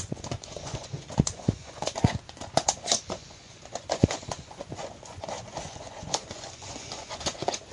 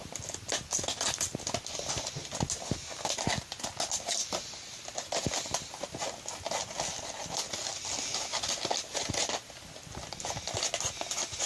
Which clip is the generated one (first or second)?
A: first